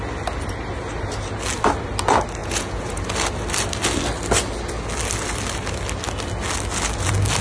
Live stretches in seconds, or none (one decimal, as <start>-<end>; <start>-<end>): 0.0-2.4; 3.0-7.4